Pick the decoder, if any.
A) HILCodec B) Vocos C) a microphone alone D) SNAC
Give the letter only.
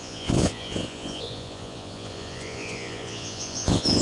B